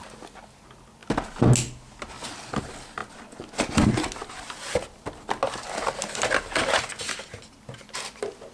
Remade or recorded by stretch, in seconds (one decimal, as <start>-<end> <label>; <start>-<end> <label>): 0.0-8.5 recorded